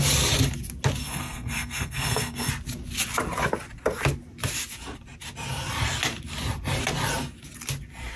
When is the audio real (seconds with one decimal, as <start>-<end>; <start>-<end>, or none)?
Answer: 0.0-1.0; 2.5-8.2